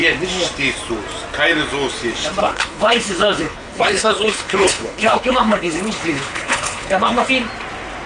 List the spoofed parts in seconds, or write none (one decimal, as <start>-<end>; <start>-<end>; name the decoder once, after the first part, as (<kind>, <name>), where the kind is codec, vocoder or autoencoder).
2.4-7.3 (codec, HILCodec)